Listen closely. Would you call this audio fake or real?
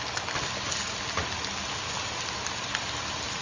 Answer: real